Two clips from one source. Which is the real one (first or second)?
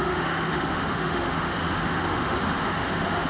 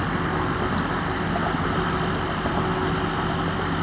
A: second